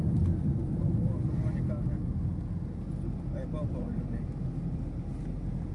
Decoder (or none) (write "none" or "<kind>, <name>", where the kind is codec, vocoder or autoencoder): none